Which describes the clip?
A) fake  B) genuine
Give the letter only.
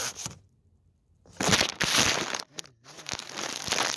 B